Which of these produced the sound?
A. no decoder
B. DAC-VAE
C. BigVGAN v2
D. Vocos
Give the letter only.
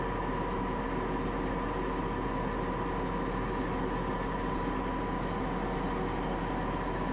A